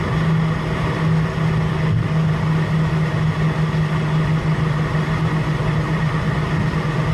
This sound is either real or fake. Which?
real